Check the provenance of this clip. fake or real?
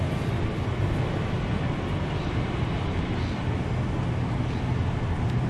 real